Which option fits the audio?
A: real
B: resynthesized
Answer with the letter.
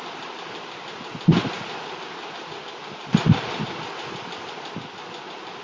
A